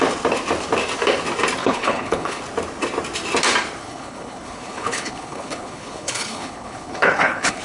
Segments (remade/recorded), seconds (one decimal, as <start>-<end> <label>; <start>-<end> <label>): 0.0-1.6 recorded; 1.6-2.4 remade; 2.4-3.8 recorded; 3.8-7.6 remade